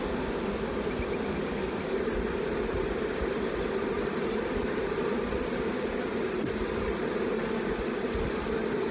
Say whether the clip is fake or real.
real